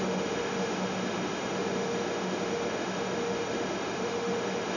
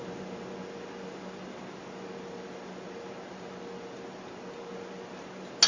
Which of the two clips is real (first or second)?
second